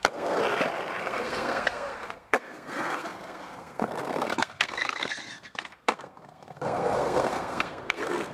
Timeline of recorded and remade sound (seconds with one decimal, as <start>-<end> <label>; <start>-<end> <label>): 0.0-0.4 remade; 0.4-1.0 recorded; 1.0-8.3 remade